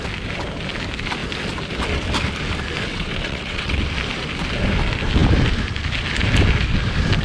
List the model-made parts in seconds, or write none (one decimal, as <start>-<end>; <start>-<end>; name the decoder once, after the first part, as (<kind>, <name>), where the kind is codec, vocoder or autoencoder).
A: 2.9-3.8 (vocoder, WaveNeXt)